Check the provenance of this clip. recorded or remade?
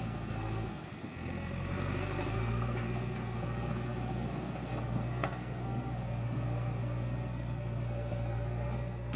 remade